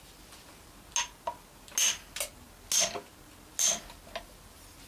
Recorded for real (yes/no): yes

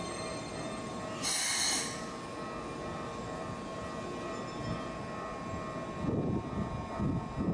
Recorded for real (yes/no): yes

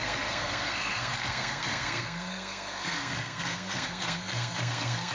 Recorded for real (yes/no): no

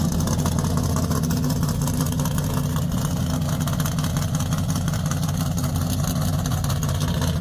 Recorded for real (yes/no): yes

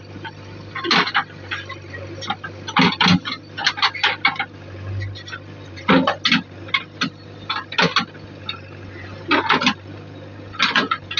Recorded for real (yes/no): yes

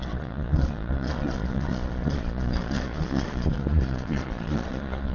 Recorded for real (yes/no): no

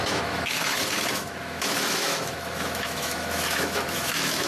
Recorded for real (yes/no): no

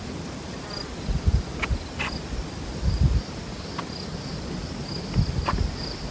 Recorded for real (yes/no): yes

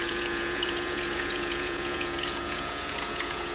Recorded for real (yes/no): no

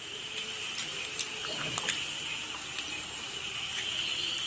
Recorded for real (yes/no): no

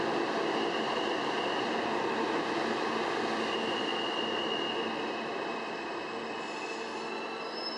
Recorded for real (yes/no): yes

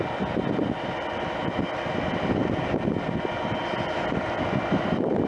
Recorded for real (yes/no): yes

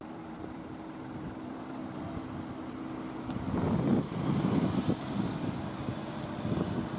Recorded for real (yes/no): no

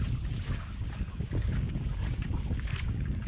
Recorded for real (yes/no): no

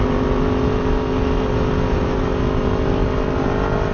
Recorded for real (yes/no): yes